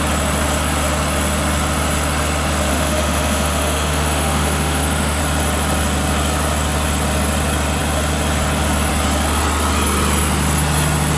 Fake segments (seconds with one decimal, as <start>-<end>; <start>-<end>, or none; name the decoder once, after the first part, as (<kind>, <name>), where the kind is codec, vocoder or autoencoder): 2.7-5.2 (autoencoder, DAC-VAE)